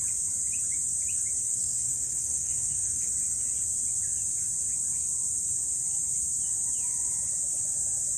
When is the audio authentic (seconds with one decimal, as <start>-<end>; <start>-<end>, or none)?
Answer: 0.0-1.5; 3.1-8.2

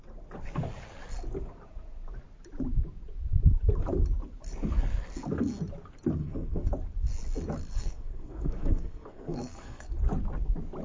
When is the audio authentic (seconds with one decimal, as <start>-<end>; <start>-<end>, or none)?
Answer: 0.0-6.2; 6.7-7.8; 10.0-10.8

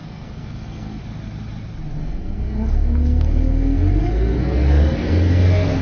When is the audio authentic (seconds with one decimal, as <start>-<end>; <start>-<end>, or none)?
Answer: 1.0-2.0

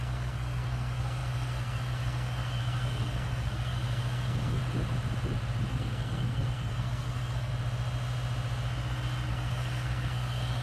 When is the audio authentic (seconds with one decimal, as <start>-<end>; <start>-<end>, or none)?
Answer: 4.6-5.7; 7.5-9.3

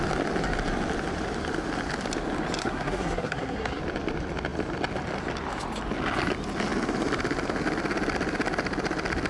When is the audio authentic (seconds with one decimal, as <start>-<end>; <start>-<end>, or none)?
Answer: 0.0-2.6; 3.8-9.3

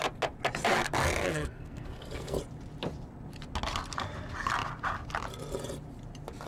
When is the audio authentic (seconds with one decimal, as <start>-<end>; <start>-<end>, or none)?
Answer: 0.0-1.3; 2.4-6.5

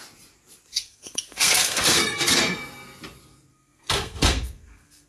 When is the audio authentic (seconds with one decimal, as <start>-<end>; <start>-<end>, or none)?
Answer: 0.0-0.7; 2.4-3.5